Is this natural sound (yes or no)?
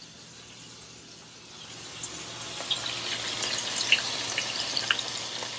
yes